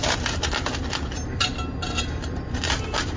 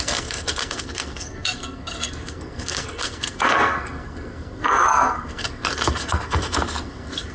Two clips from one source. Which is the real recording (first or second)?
first